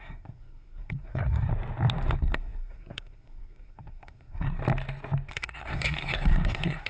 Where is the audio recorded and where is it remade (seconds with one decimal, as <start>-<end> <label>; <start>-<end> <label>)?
0.0-1.5 remade; 1.5-2.1 recorded; 2.1-4.6 remade; 4.6-5.3 recorded; 5.3-6.9 remade